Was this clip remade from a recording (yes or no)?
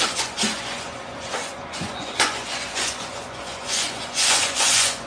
yes